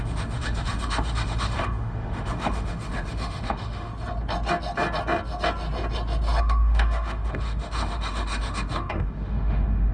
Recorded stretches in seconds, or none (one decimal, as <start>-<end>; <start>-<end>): 3.9-6.4